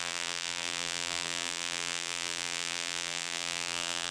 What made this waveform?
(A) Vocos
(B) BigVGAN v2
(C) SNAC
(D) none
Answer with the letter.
B